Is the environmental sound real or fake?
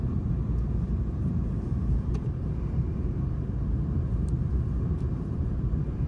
fake